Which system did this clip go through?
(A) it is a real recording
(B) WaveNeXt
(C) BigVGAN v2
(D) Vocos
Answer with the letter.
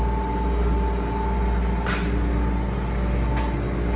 A